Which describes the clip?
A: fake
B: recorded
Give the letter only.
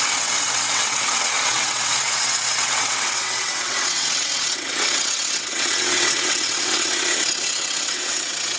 A